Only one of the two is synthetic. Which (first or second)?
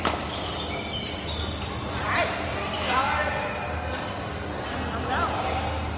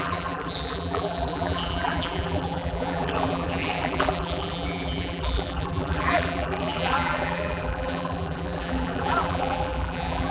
second